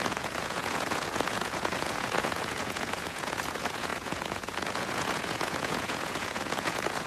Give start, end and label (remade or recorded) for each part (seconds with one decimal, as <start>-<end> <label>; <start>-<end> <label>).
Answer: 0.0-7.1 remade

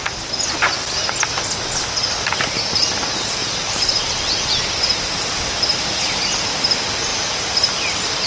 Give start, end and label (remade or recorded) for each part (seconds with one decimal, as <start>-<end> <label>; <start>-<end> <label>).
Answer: 0.0-3.4 recorded; 3.4-4.2 remade; 4.2-7.1 recorded; 7.1-8.3 remade

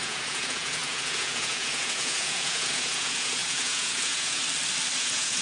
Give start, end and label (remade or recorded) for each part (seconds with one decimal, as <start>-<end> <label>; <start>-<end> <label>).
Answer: 0.0-4.4 remade; 4.4-5.0 recorded; 5.0-5.4 remade

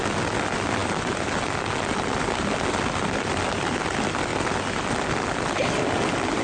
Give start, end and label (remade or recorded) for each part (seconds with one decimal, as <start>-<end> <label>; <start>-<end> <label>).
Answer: 0.0-6.4 recorded

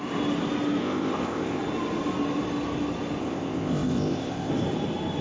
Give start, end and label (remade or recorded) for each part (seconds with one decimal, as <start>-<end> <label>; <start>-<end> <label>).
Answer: 0.0-0.8 recorded; 0.8-1.6 remade; 1.6-3.2 recorded; 3.2-4.5 remade; 4.5-5.2 recorded

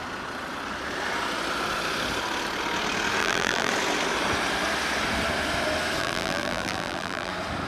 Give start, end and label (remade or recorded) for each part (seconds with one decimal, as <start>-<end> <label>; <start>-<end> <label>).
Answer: 0.0-3.2 recorded; 3.2-3.7 remade; 3.7-6.0 recorded; 6.0-7.3 remade; 7.3-7.7 recorded

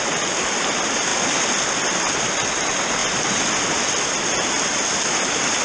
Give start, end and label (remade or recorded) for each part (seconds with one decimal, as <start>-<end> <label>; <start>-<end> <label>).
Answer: 0.0-5.6 recorded

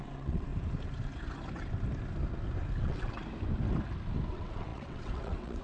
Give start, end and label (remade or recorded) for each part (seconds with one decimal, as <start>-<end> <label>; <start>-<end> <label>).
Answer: 0.0-0.5 remade; 0.5-2.8 recorded; 2.8-3.2 remade; 3.2-4.3 recorded; 4.3-5.6 remade